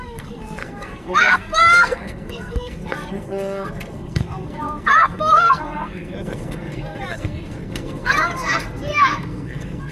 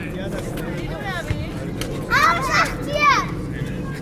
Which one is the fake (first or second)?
first